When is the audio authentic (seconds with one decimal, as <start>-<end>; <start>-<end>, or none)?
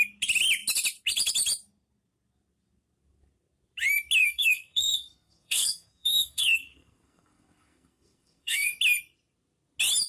0.0-4.2; 8.8-10.1